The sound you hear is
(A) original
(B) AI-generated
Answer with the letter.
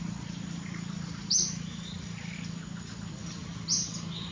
A